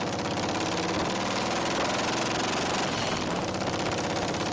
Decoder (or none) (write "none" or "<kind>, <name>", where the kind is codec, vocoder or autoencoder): none